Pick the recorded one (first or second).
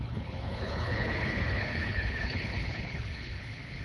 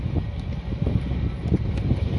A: second